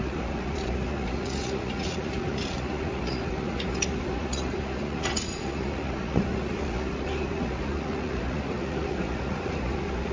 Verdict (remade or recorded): remade